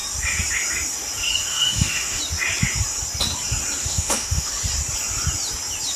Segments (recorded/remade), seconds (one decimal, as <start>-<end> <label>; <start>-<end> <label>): 0.0-1.5 recorded; 1.5-2.2 remade; 2.2-3.8 recorded; 3.8-4.5 remade; 4.5-6.0 recorded